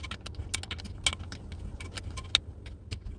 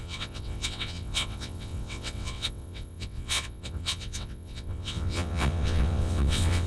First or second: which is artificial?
second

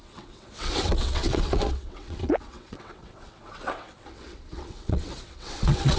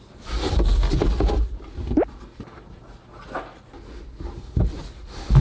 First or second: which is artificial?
first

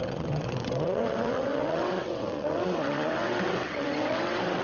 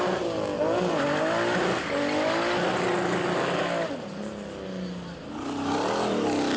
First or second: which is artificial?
first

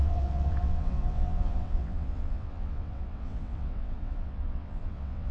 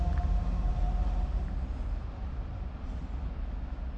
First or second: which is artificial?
first